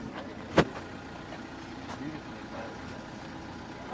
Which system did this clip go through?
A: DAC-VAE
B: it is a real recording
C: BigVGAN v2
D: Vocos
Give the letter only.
B